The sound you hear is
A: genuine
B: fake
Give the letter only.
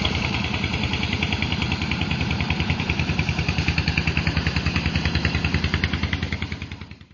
B